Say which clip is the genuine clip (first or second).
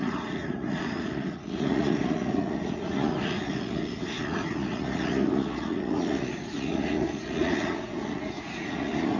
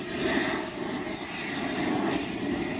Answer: second